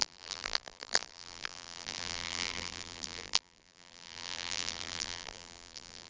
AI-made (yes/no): yes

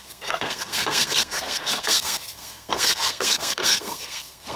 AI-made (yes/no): yes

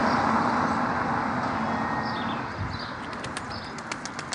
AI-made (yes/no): no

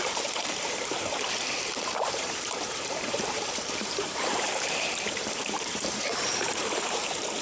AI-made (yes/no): yes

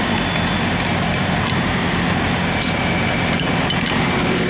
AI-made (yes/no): no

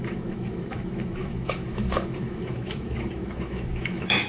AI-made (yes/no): yes